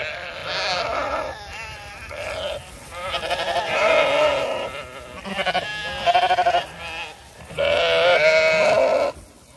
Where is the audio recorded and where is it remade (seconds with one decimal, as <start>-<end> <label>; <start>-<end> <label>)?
0.0-9.6 recorded